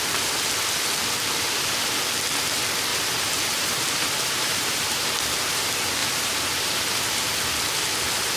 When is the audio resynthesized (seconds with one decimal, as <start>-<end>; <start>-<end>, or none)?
2.9-5.6; 6.0-7.4